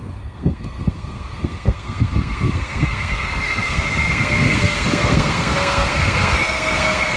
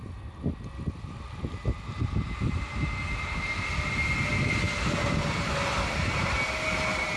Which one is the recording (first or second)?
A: second